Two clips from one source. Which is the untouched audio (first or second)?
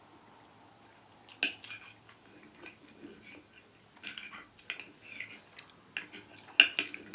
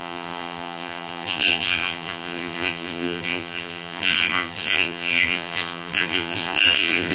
first